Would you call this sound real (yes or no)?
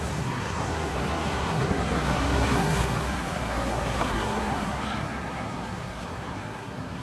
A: no